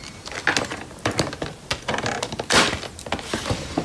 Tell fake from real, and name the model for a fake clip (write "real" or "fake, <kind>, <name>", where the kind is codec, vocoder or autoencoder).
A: real